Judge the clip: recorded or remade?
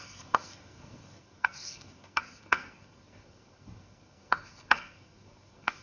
remade